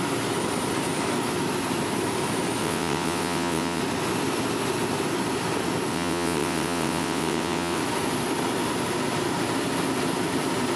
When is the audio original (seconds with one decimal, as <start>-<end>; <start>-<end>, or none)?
0.0-2.6; 3.8-5.9; 7.8-10.8